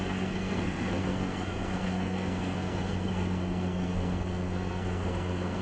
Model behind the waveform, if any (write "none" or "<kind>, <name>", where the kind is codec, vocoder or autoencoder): codec, SNAC